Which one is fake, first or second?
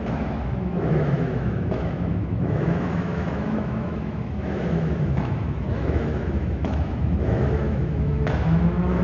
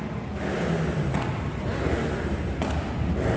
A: first